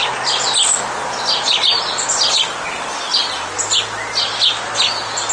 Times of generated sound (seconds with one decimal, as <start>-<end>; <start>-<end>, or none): none